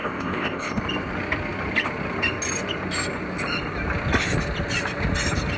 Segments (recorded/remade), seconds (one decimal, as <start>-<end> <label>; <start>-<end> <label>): 0.0-0.8 remade; 0.8-5.6 recorded

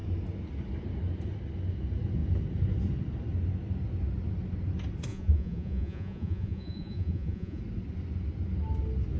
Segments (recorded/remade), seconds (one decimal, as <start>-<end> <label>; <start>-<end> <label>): 0.0-5.1 recorded; 5.1-7.6 remade; 7.6-9.2 recorded

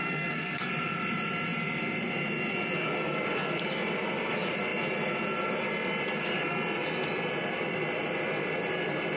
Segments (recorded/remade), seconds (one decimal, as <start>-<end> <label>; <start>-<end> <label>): 0.0-0.7 remade; 0.7-9.2 recorded